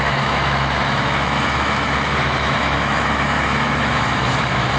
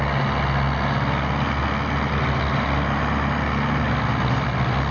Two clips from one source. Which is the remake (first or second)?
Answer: first